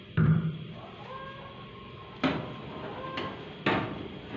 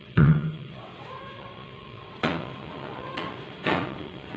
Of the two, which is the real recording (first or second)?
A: first